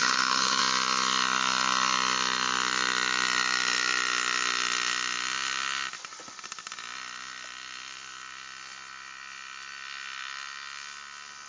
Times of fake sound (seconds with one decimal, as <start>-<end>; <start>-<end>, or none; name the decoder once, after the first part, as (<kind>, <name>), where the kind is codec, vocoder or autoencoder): 0.0-0.6 (codec, HILCodec)

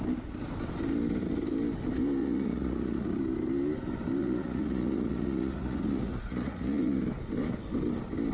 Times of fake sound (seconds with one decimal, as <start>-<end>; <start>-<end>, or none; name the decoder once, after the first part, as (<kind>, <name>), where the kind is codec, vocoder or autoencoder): 2.2-3.1 (vocoder, Vocos); 4.2-7.0